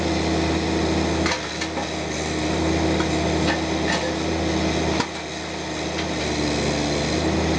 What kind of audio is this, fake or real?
real